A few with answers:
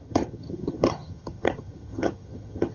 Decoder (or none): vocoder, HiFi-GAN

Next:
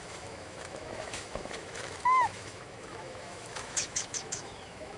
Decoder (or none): autoencoder, DAC-VAE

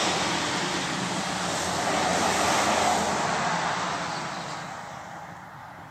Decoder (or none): none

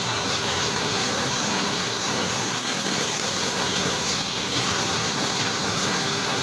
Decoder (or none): codec, SNAC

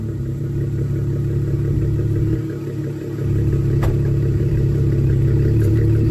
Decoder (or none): vocoder, BigVGAN v2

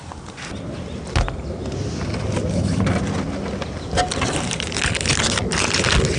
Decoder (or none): none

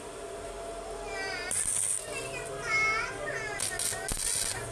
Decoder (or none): none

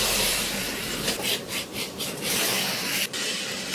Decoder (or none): none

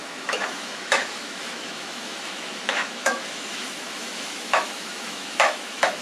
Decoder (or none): autoencoder, DAC-VAE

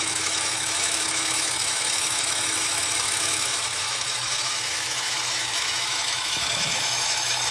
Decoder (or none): autoencoder, DAC-VAE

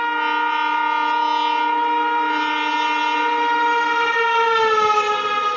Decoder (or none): none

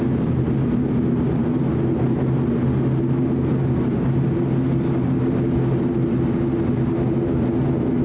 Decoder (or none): none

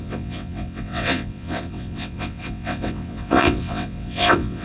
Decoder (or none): vocoder, WaveNeXt